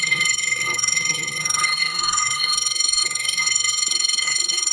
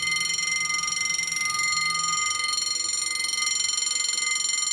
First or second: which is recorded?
second